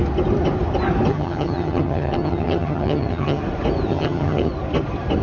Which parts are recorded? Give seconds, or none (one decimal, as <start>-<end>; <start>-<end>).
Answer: 0.0-1.1; 3.4-3.9; 4.5-5.2